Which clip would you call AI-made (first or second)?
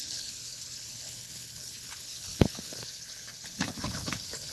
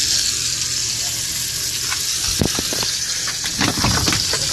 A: first